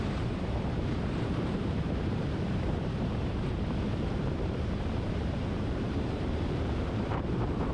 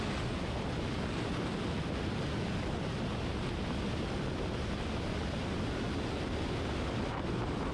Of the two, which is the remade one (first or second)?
first